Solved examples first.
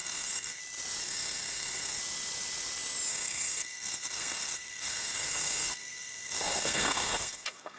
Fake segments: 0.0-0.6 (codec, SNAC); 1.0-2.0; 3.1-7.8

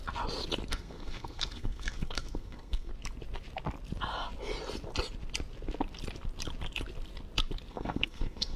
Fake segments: 0.7-2.9 (codec, SNAC); 7.7-8.6

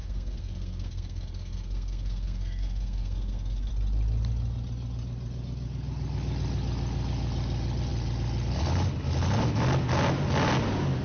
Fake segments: 0.0-3.7 (codec, SNAC)

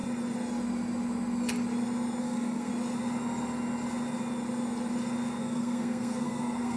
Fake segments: 2.2-2.7 (codec, SNAC); 5.4-6.8

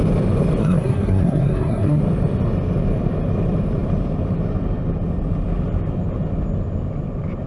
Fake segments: 0.6-2.0 (codec, SNAC)

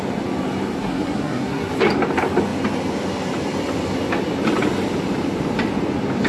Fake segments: 0.8-1.7 (codec, SNAC)

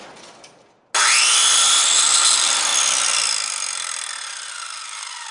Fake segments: none